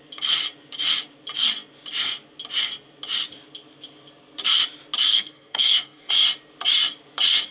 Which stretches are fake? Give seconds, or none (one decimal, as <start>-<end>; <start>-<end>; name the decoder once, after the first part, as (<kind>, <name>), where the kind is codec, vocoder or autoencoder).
5.1-6.1 (codec, SNAC)